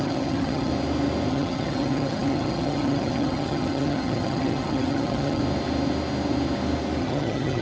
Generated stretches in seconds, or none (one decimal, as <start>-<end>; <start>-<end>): 0.0-0.7; 1.3-5.4; 7.0-7.6